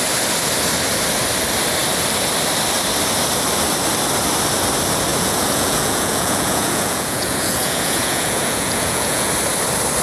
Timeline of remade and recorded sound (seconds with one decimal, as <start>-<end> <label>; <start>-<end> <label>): 0.0-5.1 recorded; 5.1-9.3 remade; 9.3-10.0 recorded